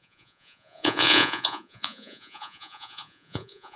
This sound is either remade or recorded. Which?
remade